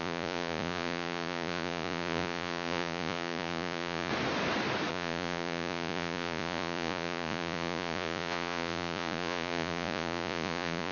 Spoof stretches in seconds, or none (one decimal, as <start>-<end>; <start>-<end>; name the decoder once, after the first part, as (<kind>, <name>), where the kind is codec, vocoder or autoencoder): 0.0-4.1 (vocoder, Vocos); 4.9-10.9